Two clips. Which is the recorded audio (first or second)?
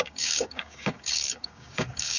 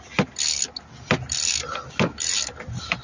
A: second